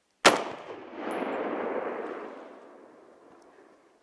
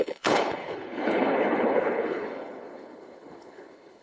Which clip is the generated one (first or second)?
second